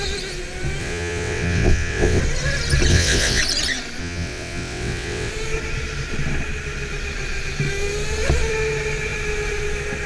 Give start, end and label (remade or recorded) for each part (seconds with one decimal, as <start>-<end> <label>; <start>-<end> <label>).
0.0-0.8 recorded; 0.8-2.2 remade; 2.2-2.9 recorded; 2.9-3.4 remade; 3.4-4.0 recorded; 4.0-5.3 remade; 5.3-10.1 recorded